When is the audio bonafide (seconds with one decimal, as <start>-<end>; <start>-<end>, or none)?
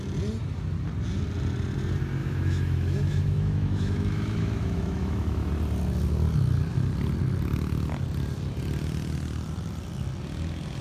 0.0-2.2; 5.5-10.8